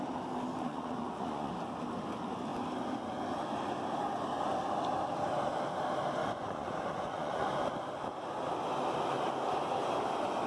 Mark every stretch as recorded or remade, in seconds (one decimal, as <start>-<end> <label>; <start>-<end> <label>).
0.0-0.5 recorded; 0.5-1.5 remade; 1.5-6.2 recorded; 6.2-7.5 remade; 7.5-10.5 recorded